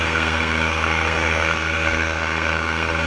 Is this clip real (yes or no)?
no